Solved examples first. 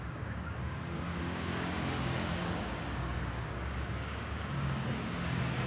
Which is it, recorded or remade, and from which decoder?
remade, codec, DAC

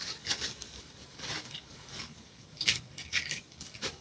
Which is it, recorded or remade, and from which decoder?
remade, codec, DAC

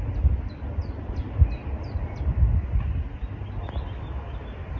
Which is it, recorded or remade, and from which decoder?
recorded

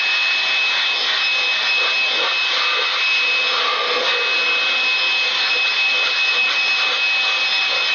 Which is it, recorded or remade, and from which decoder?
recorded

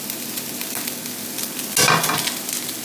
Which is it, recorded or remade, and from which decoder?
recorded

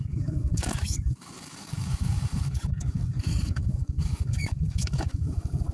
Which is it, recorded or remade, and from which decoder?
remade, codec, DAC